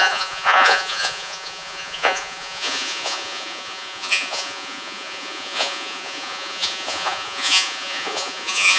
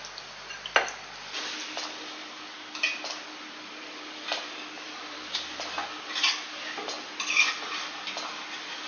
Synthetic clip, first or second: first